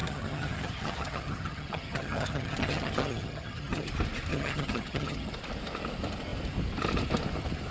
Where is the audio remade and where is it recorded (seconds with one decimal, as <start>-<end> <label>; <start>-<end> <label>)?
0.0-3.9 remade; 3.9-4.3 recorded; 4.3-5.3 remade; 5.3-7.7 recorded